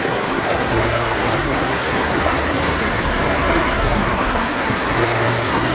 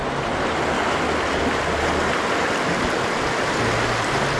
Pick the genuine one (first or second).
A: second